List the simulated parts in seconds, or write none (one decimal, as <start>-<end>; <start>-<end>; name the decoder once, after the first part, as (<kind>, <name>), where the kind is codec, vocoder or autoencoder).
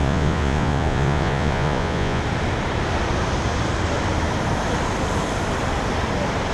0.0-2.2 (vocoder, Vocos)